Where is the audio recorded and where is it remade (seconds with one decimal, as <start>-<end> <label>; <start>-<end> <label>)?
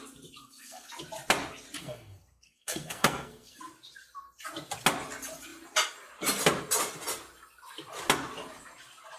0.0-0.4 recorded; 0.4-0.9 remade; 0.9-1.8 recorded; 1.8-3.6 remade; 3.6-9.2 recorded